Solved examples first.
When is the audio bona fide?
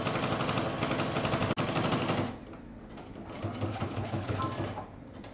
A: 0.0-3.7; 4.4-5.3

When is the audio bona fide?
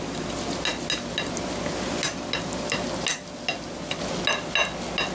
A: 0.0-5.1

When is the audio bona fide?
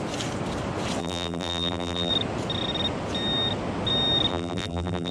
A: 0.0-1.0; 2.1-4.3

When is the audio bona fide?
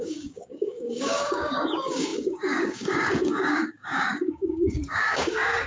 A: none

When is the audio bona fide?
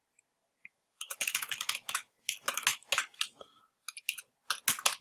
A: 0.0-0.6; 3.6-5.0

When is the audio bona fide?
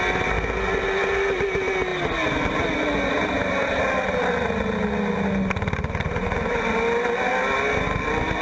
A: 0.0-8.4